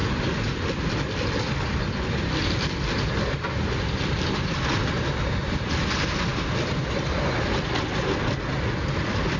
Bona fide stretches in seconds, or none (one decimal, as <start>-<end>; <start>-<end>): 0.0-9.4